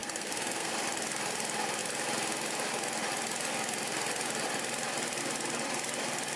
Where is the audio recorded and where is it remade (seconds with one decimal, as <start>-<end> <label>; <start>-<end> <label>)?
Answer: 0.0-0.7 remade; 0.7-6.4 recorded